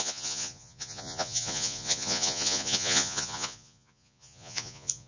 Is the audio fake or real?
fake